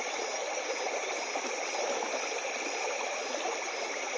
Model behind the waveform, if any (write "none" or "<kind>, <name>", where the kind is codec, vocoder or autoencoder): vocoder, BigVGAN v2